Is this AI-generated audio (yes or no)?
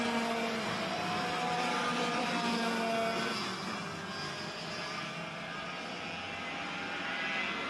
no